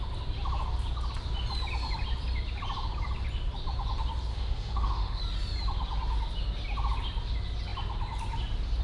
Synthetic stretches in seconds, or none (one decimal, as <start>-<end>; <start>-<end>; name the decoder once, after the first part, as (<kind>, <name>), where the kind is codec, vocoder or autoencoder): 4.3-5.2 (autoencoder, DAC-VAE)